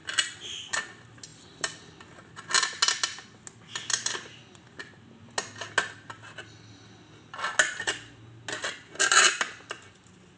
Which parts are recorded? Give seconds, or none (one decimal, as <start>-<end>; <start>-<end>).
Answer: 0.8-1.3; 2.1-10.4